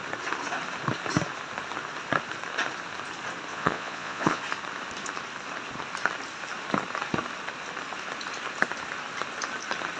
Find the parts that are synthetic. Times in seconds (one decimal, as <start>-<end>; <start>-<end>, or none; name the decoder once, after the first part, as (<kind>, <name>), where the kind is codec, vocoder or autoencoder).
3.5-4.4 (vocoder, Vocos)